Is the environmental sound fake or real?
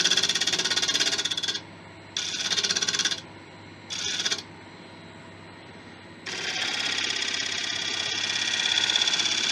real